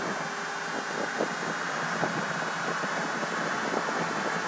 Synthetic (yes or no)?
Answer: no